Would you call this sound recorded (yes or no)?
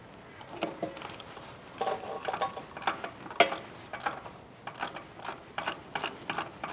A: yes